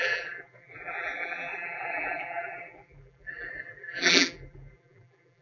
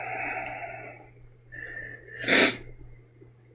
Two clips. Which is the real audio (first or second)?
second